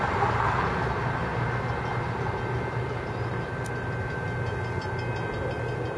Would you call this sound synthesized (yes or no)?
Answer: no